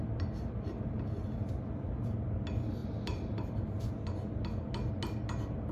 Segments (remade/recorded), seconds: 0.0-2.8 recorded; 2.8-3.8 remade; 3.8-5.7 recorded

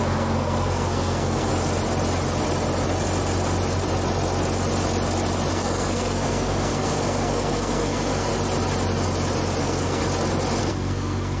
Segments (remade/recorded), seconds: 0.0-1.5 remade; 1.5-5.5 recorded; 5.5-8.3 remade; 8.3-9.6 recorded; 9.6-10.0 remade; 10.0-10.6 recorded; 10.6-11.4 remade

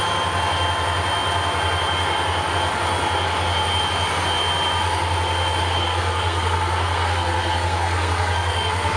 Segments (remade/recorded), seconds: 0.0-5.8 recorded; 5.8-9.0 remade

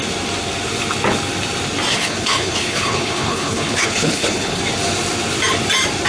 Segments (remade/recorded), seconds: 0.0-1.9 recorded; 1.9-4.6 remade; 4.6-6.1 recorded

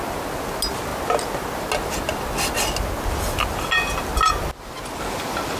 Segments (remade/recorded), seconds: 0.0-5.6 recorded

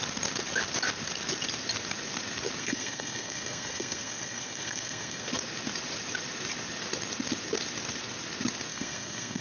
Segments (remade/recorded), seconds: 0.0-2.6 recorded; 2.6-5.3 remade; 5.3-8.7 recorded; 8.7-9.4 remade

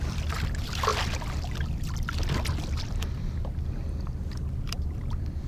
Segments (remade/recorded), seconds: 0.0-5.5 recorded

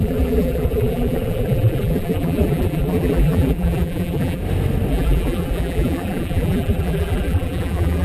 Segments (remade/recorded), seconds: 0.0-4.4 remade; 4.4-4.9 recorded; 4.9-8.0 remade